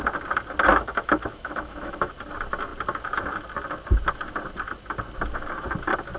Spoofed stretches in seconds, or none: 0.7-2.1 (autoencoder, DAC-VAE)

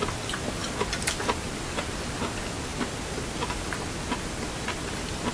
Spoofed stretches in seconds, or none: none

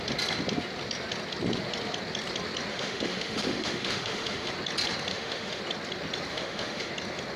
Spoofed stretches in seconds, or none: 2.7-4.5 (autoencoder, DAC-VAE); 5.1-5.6; 6.3-6.9

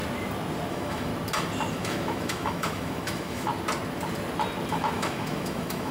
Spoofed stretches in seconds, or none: 0.7-1.1 (autoencoder, DAC-VAE); 1.7-3.5; 4.7-5.9

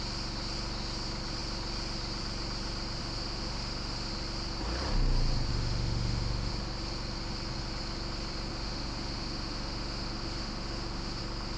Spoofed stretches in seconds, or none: 3.0-4.1 (autoencoder, DAC-VAE); 5.5-6.5; 8.5-11.2

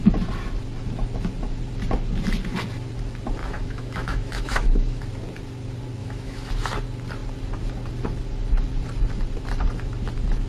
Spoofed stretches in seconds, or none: 3.4-5.0 (autoencoder, DAC-VAE); 6.0-6.5

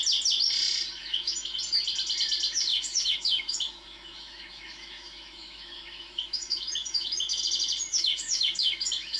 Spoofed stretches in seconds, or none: 1.0-1.6 (autoencoder, DAC-VAE); 2.7-7.4; 7.9-9.2

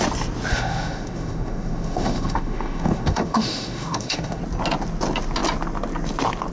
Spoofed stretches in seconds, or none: 0.5-4.4 (autoencoder, DAC-VAE)